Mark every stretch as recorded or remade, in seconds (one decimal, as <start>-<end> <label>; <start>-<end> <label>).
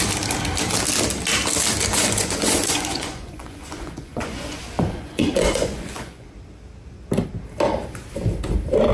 0.0-1.9 recorded; 1.9-6.3 remade; 6.3-8.9 recorded